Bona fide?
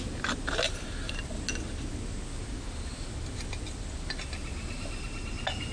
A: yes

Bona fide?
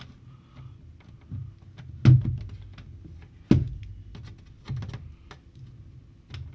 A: yes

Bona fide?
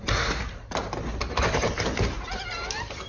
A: yes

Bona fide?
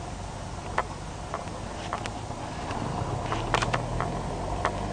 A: yes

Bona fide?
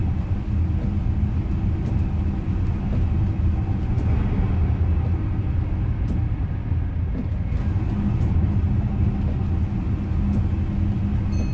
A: yes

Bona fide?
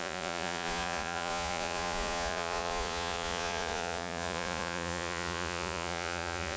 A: no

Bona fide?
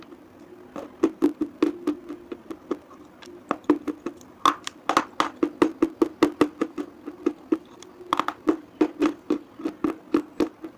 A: yes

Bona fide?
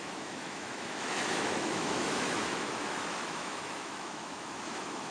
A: no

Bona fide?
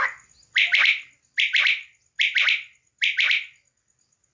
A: yes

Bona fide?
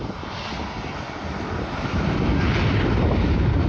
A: yes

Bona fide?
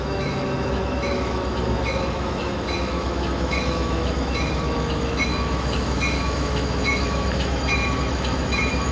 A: no